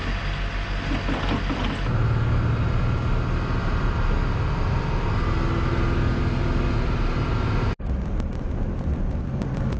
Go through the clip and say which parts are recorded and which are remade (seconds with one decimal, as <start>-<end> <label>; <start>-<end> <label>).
0.0-9.8 recorded